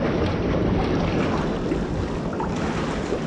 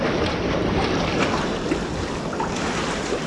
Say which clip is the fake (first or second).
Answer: second